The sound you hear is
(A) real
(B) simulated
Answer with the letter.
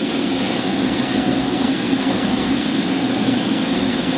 B